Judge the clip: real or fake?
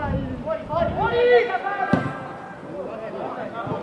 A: real